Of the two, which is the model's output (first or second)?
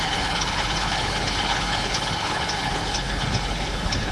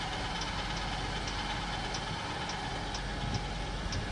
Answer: first